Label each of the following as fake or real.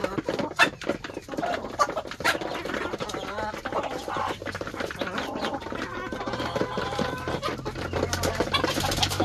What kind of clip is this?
real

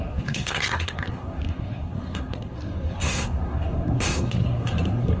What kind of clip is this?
fake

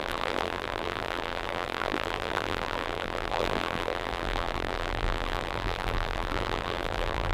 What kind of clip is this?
fake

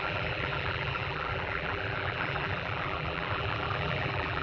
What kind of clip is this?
fake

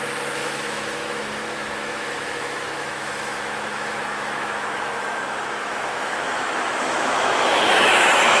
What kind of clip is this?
fake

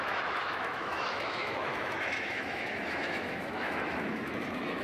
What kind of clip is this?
fake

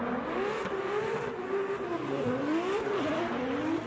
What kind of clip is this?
real